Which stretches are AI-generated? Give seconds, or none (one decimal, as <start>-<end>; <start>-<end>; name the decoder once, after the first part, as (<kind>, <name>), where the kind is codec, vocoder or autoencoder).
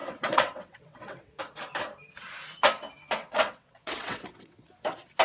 0.0-1.4 (vocoder, WaveNeXt); 3.2-4.7